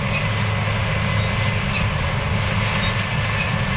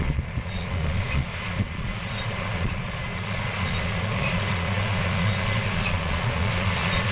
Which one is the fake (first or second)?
second